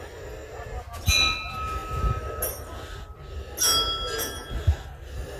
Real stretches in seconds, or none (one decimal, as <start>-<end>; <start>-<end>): 0.0-5.4